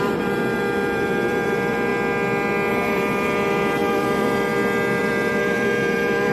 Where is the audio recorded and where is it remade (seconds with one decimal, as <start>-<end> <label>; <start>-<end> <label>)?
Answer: 0.0-1.9 remade; 1.9-2.7 recorded; 2.7-4.5 remade; 4.5-5.0 recorded; 5.0-6.3 remade